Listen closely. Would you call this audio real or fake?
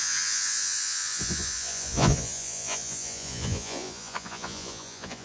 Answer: fake